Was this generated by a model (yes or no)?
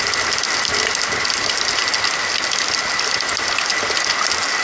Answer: no